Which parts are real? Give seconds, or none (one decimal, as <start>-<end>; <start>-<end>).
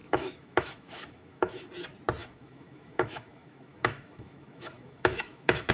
1.7-2.2